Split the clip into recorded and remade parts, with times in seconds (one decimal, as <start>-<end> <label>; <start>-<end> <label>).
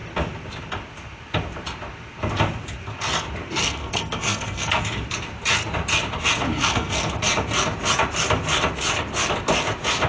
0.0-3.6 recorded; 3.6-4.8 remade; 4.8-6.5 recorded; 6.5-7.0 remade; 7.0-10.1 recorded